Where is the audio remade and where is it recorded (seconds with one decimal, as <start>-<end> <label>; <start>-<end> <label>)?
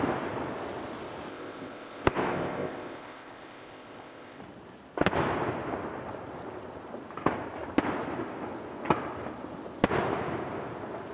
0.0-1.3 recorded; 1.3-4.4 remade; 4.4-11.1 recorded